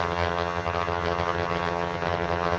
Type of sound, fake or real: fake